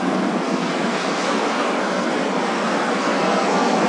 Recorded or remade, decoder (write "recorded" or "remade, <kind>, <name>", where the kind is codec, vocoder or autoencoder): remade, codec, SNAC